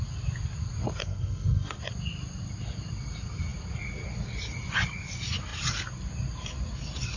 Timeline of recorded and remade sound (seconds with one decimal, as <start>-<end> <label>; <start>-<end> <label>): 0.0-1.0 recorded; 1.0-1.8 remade; 1.8-7.2 recorded